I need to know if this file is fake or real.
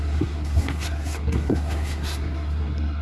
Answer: fake